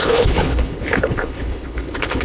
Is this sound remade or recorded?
remade